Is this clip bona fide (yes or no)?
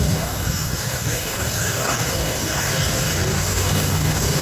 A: no